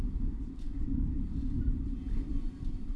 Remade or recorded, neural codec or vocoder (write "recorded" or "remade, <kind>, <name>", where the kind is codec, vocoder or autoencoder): remade, vocoder, BigVGAN v2